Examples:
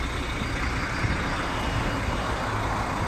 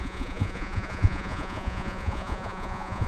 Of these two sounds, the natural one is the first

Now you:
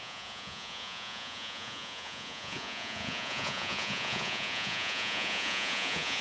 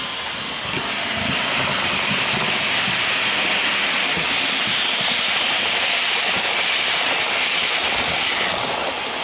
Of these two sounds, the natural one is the second